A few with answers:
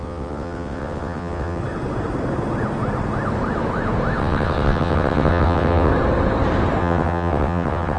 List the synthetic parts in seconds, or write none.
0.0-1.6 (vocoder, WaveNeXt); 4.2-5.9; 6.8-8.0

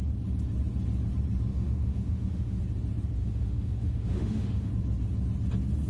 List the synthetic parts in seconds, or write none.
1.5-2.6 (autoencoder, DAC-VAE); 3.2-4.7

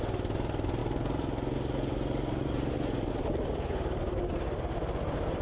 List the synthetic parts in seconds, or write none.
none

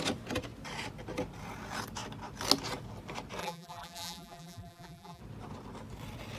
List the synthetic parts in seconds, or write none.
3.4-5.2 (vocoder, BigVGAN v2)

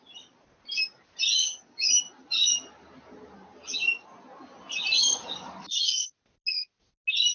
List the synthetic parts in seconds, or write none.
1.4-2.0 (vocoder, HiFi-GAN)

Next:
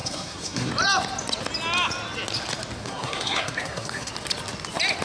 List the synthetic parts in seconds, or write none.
0.0-0.7 (codec, SNAC); 2.8-4.1